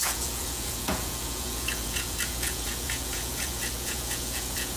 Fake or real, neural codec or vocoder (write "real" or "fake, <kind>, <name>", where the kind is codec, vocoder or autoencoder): fake, vocoder, Vocos